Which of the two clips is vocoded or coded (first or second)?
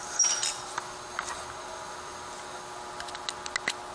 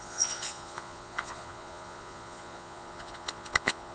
second